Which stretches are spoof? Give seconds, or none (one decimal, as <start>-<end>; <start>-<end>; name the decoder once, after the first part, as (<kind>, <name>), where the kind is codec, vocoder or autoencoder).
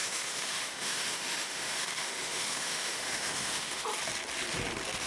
0.0-3.9 (autoencoder, DAC-VAE)